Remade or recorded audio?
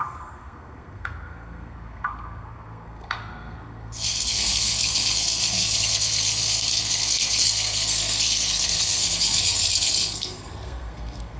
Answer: remade